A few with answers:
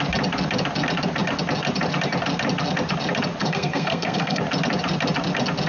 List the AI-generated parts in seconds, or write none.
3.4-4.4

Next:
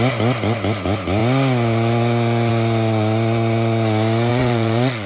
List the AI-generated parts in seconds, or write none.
4.3-5.1

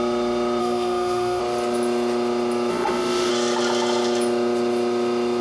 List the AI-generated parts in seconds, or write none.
0.6-1.4; 2.7-3.3

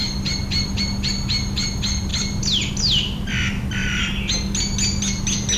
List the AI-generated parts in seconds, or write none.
none

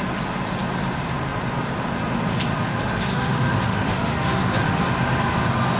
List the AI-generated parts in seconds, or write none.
2.7-4.8